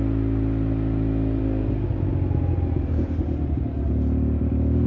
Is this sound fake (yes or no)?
no